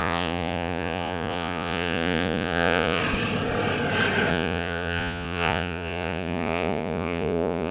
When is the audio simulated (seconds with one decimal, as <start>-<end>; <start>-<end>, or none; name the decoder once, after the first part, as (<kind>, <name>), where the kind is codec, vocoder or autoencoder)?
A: 0.0-3.0 (vocoder, Vocos); 4.3-7.7